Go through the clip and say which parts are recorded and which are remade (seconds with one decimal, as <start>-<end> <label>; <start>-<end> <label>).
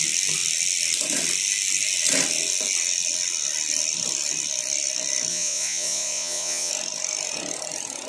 0.0-5.3 recorded; 5.3-6.7 remade; 6.7-8.1 recorded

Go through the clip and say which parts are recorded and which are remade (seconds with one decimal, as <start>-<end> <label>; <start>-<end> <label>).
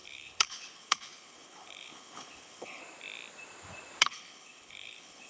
0.0-2.8 remade; 2.8-4.0 recorded; 4.0-5.3 remade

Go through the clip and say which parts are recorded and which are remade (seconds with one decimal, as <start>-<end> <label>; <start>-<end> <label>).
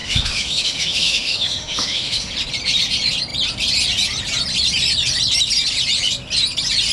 0.0-2.3 remade; 2.3-6.9 recorded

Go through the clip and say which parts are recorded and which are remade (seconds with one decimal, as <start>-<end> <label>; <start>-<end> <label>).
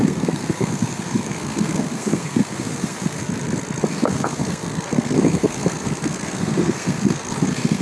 0.0-3.2 remade; 3.2-3.9 recorded; 3.9-7.8 remade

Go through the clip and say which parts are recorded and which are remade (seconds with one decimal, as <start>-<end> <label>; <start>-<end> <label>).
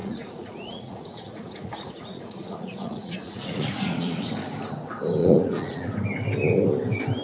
0.0-4.3 remade; 4.3-5.2 recorded; 5.2-5.9 remade; 5.9-7.2 recorded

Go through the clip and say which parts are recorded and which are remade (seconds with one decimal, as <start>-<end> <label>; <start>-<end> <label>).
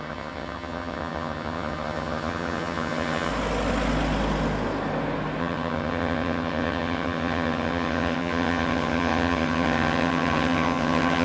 0.0-3.3 remade; 3.3-5.4 recorded; 5.4-11.2 remade